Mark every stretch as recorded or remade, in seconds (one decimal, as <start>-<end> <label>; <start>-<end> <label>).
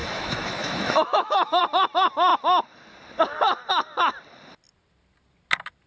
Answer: 0.0-1.6 remade; 1.6-5.9 recorded